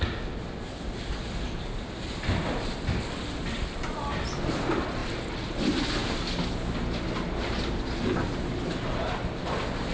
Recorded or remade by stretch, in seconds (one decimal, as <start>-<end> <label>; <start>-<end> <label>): 0.0-9.9 recorded

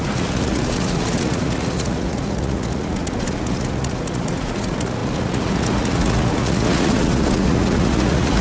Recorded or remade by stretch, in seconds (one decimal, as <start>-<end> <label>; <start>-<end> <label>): 0.0-8.4 remade

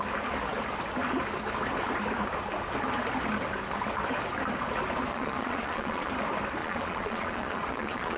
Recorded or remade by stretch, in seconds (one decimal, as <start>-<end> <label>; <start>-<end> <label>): 0.0-5.1 recorded; 5.1-6.1 remade; 6.1-6.6 recorded; 6.6-8.2 remade